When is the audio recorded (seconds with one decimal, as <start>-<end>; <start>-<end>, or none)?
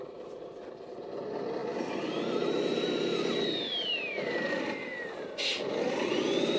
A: 0.0-6.6